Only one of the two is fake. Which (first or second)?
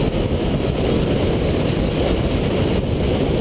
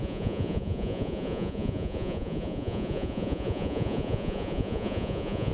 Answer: second